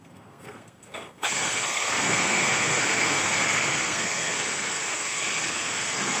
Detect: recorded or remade remade